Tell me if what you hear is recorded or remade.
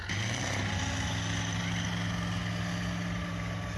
recorded